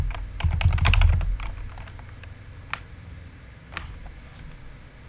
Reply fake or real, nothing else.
real